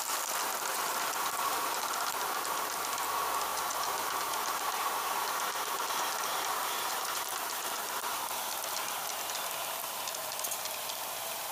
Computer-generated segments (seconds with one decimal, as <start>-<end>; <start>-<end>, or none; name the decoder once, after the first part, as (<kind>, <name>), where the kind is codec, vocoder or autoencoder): 0.7-1.9 (vocoder, BigVGAN v2); 3.5-8.2